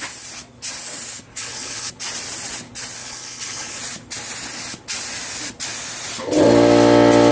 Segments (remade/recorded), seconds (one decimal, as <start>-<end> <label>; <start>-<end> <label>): 0.0-1.3 recorded; 1.3-1.9 remade; 1.9-3.0 recorded; 3.0-3.8 remade; 3.8-7.3 recorded